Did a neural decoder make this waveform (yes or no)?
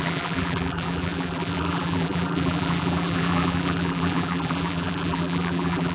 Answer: yes